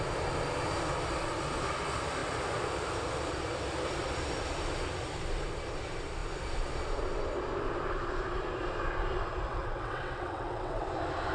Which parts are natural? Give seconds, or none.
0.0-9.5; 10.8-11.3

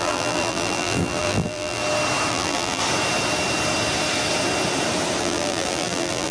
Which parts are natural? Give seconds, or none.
1.8-2.3; 2.8-5.2